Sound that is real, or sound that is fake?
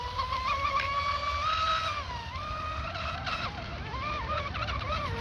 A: fake